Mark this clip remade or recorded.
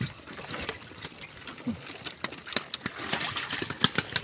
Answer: recorded